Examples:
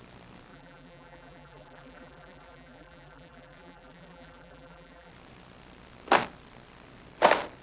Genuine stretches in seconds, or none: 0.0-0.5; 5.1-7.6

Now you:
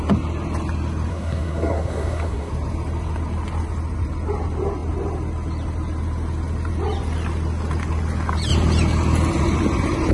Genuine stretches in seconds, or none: 0.0-1.1; 2.5-10.1